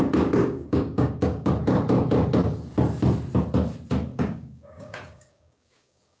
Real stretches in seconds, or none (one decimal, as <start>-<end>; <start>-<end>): 0.0-0.4; 1.5-4.1